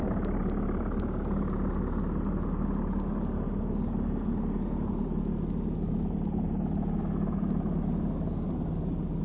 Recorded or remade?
recorded